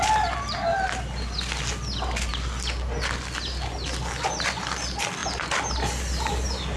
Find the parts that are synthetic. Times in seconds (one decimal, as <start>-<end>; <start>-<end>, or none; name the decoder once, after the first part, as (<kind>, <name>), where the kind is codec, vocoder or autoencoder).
none